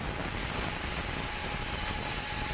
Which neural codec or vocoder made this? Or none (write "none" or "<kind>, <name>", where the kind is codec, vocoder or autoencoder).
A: none